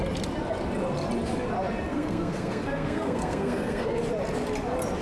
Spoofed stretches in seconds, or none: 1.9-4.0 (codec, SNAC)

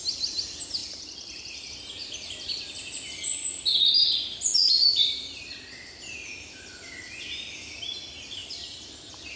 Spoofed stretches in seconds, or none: 0.8-1.7 (vocoder, BigVGAN v2); 4.9-5.6; 8.4-8.9